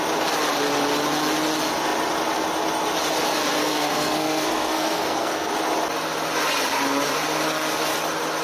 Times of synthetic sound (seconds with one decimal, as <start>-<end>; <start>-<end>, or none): 3.6-5.5